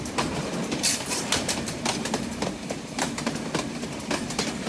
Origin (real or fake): fake